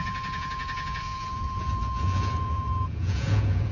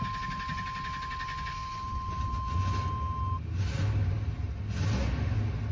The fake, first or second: first